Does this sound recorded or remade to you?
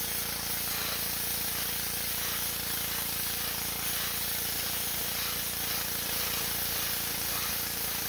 remade